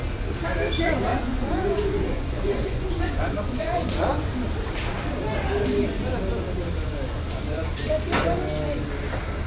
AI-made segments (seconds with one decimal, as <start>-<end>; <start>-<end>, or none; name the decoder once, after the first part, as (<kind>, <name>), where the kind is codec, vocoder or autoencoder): 1.1-4.3 (vocoder, Vocos)